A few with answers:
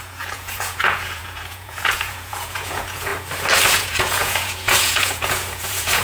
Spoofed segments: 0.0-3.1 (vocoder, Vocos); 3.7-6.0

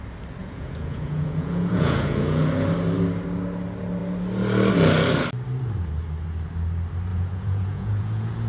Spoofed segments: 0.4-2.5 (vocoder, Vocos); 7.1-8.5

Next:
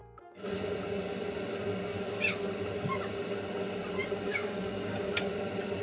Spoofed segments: 4.3-5.1 (codec, DAC)